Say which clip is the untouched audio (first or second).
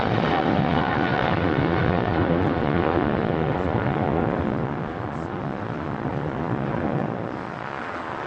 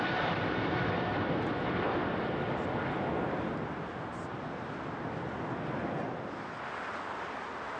second